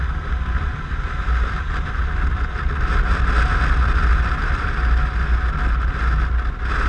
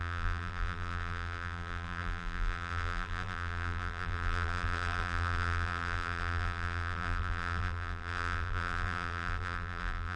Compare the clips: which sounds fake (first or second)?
second